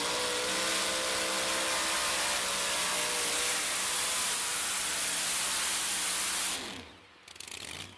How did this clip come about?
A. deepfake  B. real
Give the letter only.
B